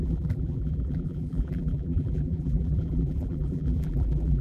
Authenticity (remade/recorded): remade